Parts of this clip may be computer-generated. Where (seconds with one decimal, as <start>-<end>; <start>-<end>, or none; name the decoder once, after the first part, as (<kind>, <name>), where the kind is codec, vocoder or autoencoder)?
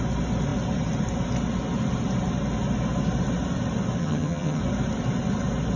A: 4.0-4.6 (vocoder, HiFi-GAN)